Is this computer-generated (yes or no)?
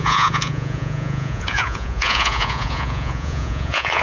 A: yes